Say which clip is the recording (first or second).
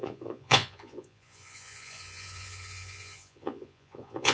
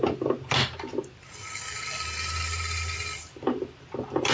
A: second